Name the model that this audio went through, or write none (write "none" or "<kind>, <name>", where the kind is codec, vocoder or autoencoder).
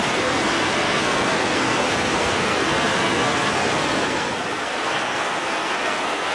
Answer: codec, SNAC